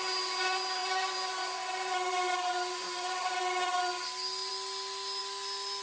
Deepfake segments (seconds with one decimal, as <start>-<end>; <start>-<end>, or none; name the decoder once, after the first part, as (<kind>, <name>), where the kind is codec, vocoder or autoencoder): 0.8-3.4 (vocoder, BigVGAN v2)